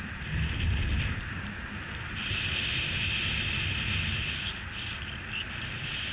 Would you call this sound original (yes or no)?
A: yes